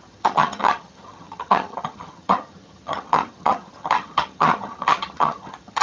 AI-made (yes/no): yes